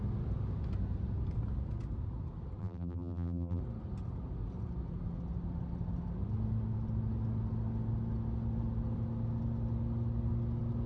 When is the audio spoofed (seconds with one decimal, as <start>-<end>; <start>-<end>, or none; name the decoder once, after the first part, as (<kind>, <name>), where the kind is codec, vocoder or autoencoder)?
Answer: 2.6-3.6 (vocoder, BigVGAN v2)